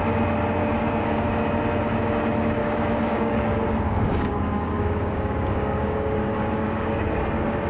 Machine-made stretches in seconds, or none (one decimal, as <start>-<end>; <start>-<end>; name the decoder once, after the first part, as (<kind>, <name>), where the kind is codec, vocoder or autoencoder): 0.6-1.3 (codec, DAC); 2.6-7.2